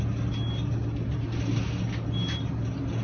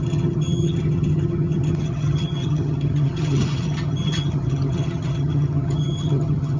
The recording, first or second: first